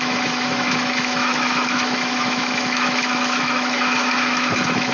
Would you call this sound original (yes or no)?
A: no